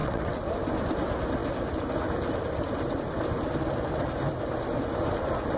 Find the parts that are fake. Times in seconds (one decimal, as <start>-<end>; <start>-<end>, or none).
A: 0.0-0.5